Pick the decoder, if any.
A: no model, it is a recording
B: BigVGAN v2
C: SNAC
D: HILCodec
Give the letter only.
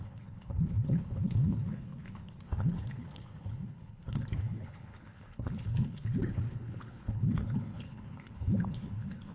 D